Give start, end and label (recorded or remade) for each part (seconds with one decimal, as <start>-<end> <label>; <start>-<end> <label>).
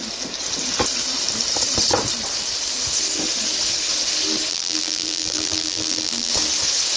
0.0-4.5 recorded; 4.5-6.3 remade; 6.3-7.0 recorded